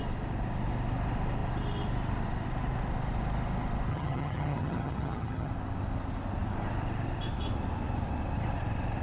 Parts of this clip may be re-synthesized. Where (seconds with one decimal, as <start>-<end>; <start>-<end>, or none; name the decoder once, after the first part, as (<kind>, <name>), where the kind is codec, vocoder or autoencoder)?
3.9-5.5 (vocoder, HiFi-GAN)